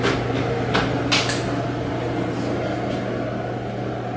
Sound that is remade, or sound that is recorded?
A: recorded